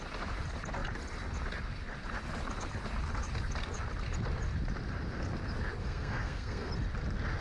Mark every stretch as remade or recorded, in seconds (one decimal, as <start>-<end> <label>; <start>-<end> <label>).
0.0-5.8 recorded; 5.8-6.7 remade; 6.7-7.4 recorded